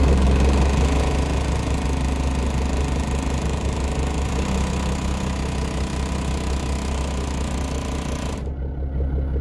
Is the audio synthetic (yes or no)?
no